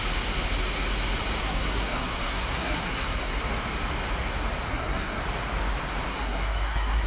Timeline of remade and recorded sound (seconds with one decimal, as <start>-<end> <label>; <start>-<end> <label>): 0.0-1.4 recorded; 1.4-3.4 remade; 3.4-4.7 recorded; 4.7-5.2 remade; 5.2-6.1 recorded; 6.1-7.1 remade